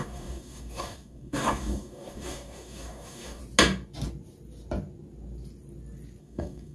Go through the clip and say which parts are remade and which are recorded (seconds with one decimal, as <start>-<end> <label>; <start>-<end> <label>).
0.0-3.4 remade; 3.4-6.2 recorded; 6.2-6.7 remade